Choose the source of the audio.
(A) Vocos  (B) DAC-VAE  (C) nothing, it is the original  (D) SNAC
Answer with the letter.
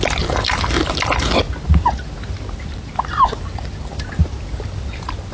C